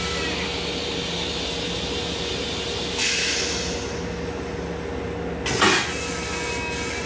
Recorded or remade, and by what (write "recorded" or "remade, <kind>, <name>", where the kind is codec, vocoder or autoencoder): recorded